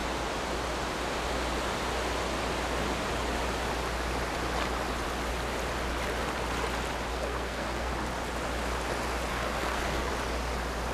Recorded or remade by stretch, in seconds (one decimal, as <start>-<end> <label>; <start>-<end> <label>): 0.0-7.1 recorded; 7.1-7.9 remade; 7.9-9.3 recorded; 9.3-10.1 remade; 10.1-10.9 recorded